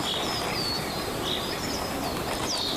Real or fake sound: real